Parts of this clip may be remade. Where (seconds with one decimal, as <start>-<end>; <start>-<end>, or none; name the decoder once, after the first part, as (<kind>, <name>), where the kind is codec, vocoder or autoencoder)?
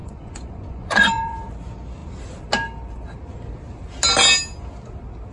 0.0-1.5 (vocoder, Vocos)